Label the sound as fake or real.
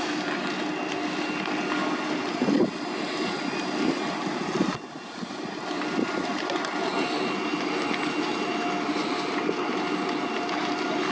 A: real